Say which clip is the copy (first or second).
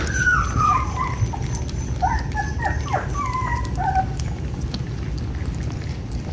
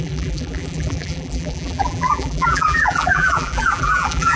second